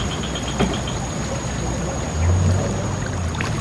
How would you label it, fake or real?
real